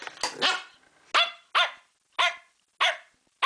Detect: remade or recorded recorded